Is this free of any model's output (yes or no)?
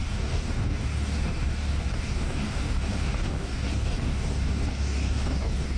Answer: no